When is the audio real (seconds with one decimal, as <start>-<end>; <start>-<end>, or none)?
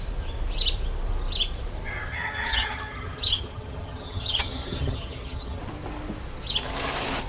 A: 0.0-2.1; 5.6-7.3